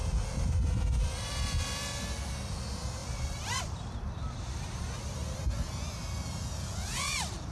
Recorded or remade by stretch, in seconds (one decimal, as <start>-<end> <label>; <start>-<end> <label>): 0.0-1.3 remade; 1.3-3.0 recorded; 3.0-3.6 remade; 3.6-7.5 recorded